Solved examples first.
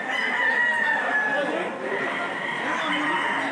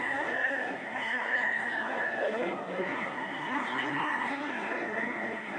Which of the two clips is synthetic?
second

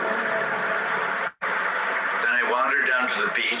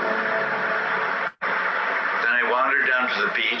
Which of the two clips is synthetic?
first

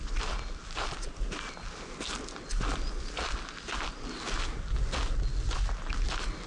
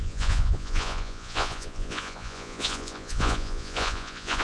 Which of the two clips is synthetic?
second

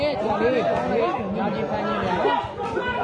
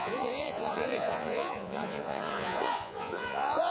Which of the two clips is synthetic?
second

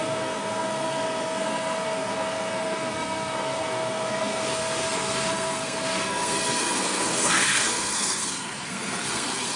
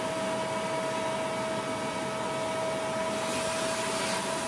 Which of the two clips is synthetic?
first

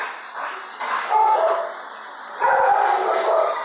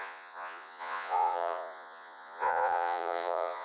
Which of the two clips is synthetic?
second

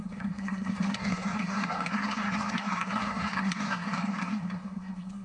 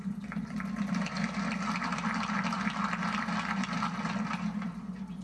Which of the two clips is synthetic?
first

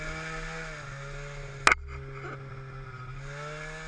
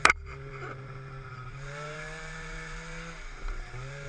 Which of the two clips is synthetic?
second